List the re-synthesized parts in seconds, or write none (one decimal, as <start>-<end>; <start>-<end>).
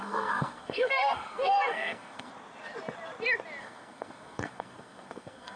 0.0-2.3; 3.6-5.6